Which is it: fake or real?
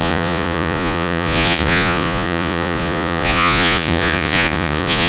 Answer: fake